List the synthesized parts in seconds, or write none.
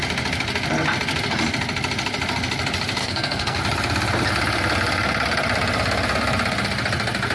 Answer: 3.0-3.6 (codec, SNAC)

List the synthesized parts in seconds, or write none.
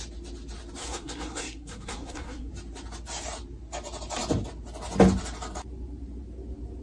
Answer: 0.8-2.5 (codec, SNAC)